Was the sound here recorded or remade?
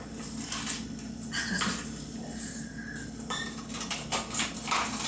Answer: recorded